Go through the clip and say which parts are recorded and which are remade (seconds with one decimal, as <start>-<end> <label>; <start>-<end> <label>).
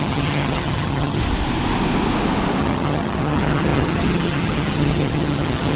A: 0.0-1.2 remade; 1.2-2.6 recorded; 2.6-5.8 remade